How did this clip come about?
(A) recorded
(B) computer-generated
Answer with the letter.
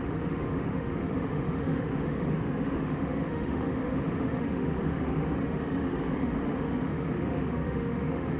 B